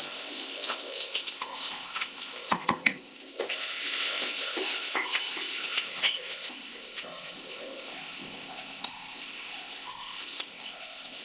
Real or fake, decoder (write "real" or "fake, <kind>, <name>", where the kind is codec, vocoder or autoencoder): fake, codec, ZipCodec